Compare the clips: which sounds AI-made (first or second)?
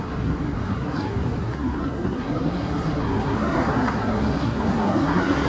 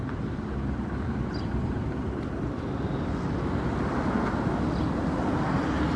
first